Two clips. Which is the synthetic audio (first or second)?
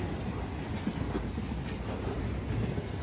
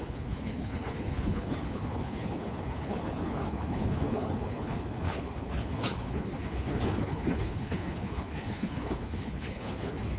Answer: second